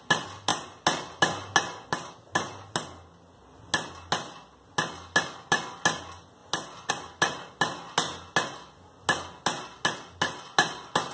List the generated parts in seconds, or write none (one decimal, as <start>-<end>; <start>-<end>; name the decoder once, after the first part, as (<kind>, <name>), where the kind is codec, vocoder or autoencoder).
none